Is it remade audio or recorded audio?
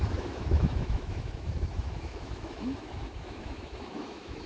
remade